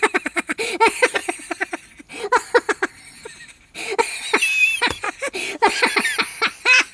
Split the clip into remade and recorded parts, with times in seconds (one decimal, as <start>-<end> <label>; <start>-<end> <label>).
0.0-6.9 recorded

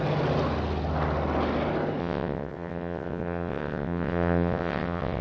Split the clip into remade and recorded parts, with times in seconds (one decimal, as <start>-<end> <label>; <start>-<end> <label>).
0.0-2.0 recorded; 2.0-5.2 remade

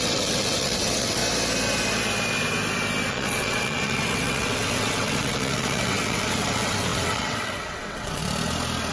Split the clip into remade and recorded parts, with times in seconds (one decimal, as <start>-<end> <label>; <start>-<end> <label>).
0.0-1.2 remade; 1.2-3.1 recorded; 3.1-8.2 remade; 8.2-8.9 recorded

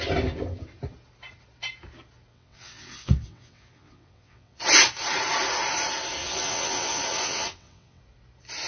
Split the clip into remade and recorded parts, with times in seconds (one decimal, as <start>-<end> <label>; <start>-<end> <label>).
0.0-2.3 recorded; 2.3-4.6 remade; 4.6-6.2 recorded; 6.2-8.0 remade; 8.0-8.7 recorded